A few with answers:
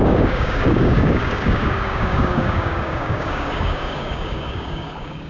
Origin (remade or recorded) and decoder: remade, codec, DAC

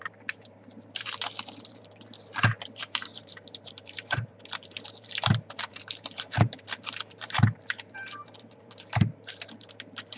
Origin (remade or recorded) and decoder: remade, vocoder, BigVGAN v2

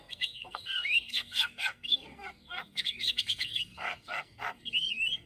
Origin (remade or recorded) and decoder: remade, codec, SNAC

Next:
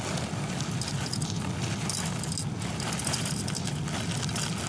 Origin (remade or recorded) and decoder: recorded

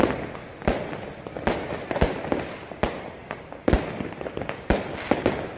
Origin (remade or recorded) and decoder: recorded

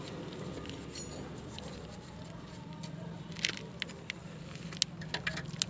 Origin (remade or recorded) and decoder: recorded